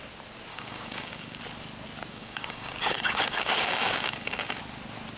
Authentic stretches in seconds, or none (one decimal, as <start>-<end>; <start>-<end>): 0.0-0.5; 1.4-2.1; 4.6-5.2